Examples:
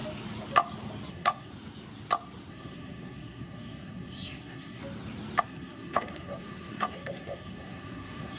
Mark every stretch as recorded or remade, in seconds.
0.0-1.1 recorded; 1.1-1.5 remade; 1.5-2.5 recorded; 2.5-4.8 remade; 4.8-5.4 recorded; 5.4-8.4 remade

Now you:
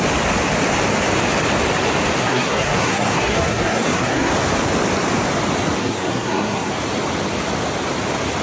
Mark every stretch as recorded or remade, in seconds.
0.0-2.2 recorded; 2.2-4.3 remade; 4.3-5.8 recorded; 5.8-6.7 remade; 6.7-8.4 recorded

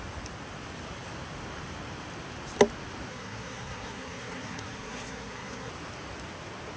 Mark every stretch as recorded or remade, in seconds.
0.0-3.1 recorded; 3.1-5.7 remade; 5.7-6.8 recorded

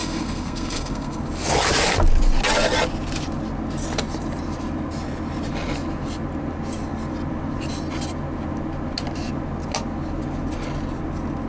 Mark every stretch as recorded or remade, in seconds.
0.0-1.2 remade; 1.2-11.5 recorded

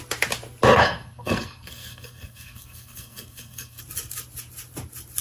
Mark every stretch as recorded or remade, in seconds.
0.0-0.7 recorded; 0.7-3.8 remade; 3.8-5.2 recorded

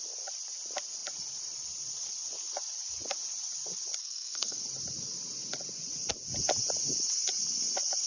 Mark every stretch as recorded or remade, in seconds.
0.0-4.0 recorded; 4.0-4.6 remade; 4.6-8.1 recorded